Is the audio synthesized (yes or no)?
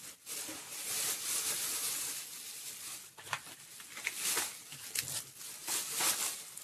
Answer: no